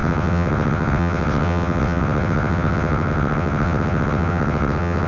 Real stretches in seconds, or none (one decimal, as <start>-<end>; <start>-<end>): none